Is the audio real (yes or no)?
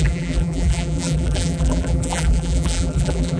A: no